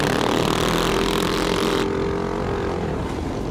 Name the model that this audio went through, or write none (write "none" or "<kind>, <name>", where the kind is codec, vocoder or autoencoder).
none